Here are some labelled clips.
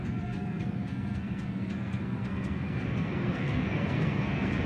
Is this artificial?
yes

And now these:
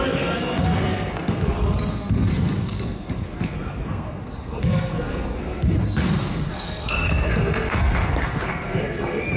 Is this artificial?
yes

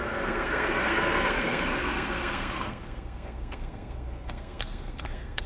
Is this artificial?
yes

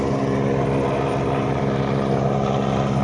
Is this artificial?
no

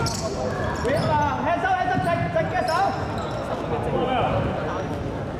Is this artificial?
no